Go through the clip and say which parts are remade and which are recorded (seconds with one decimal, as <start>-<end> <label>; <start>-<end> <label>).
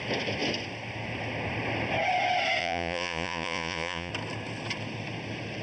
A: 0.0-2.6 recorded; 2.6-4.1 remade; 4.1-5.6 recorded